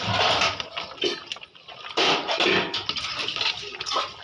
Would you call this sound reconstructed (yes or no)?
no